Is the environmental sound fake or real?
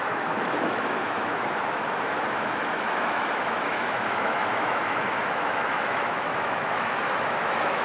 fake